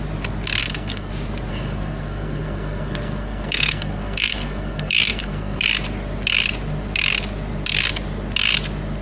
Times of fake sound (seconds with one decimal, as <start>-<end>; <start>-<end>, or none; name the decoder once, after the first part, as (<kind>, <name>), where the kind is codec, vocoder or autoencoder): 0.6-1.1 (codec, SNAC); 1.5-5.6